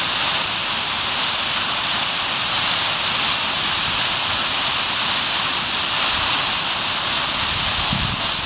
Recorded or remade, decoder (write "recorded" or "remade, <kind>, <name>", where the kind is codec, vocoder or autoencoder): recorded